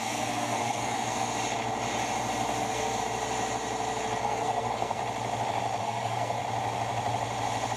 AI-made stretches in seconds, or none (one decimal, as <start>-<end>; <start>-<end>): 0.0-1.3; 2.6-3.0; 4.2-5.0; 5.8-6.4